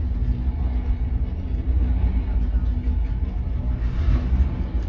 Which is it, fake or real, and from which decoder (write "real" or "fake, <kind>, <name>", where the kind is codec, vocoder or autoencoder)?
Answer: real